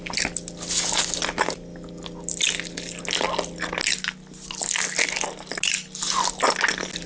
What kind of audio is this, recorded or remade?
recorded